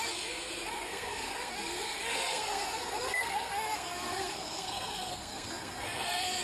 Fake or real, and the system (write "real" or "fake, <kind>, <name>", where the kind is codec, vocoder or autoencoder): fake, codec, SNAC